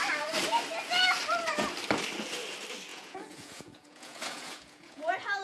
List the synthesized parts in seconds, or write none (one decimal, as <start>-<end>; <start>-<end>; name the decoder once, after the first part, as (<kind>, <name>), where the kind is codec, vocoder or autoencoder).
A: 2.9-5.4 (vocoder, Vocos)